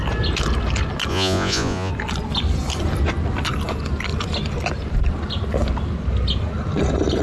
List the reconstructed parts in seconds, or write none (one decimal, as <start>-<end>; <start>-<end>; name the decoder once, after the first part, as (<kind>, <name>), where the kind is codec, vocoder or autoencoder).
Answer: 1.1-1.9 (vocoder, Vocos)